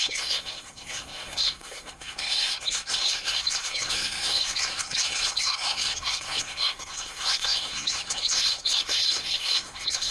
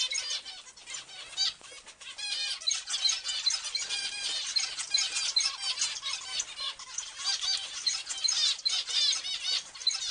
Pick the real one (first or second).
second